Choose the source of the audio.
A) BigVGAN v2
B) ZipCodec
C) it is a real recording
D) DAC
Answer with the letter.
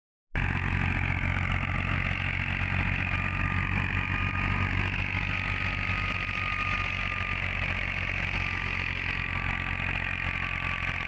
C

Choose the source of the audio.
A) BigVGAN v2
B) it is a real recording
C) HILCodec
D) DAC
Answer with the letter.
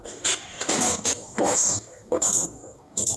D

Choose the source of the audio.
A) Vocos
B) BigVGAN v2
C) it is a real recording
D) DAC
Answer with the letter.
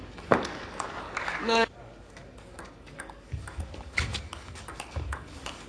D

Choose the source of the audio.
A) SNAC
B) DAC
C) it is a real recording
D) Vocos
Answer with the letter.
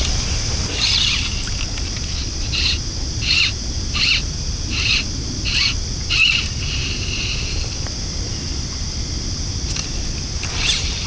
C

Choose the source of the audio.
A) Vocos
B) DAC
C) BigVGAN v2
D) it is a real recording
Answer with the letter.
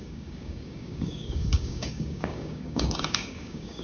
B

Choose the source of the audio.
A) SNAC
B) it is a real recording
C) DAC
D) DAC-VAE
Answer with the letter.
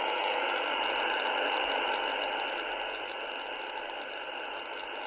B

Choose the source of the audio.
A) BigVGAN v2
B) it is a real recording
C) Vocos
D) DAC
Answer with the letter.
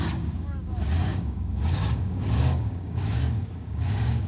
D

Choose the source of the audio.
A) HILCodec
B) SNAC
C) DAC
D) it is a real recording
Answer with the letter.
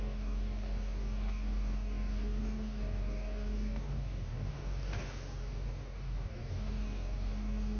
C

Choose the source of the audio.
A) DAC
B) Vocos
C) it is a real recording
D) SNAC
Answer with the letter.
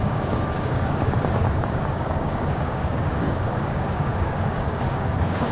A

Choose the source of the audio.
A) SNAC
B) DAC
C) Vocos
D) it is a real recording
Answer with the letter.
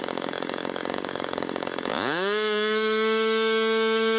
B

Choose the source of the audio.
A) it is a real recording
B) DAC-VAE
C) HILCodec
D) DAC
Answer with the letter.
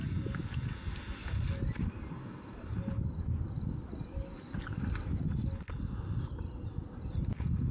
A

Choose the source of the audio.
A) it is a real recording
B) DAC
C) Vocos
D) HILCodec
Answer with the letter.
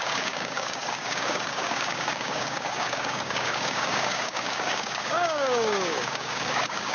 B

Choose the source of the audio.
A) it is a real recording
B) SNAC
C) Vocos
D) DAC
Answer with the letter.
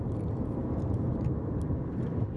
A